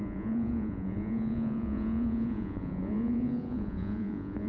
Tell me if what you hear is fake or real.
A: fake